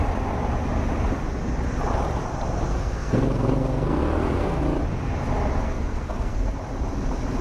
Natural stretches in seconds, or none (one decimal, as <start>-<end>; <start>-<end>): 0.0-2.7; 4.6-5.6; 6.5-7.4